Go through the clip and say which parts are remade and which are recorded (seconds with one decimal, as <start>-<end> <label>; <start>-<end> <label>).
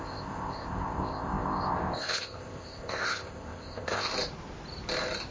0.0-4.1 remade; 4.1-5.3 recorded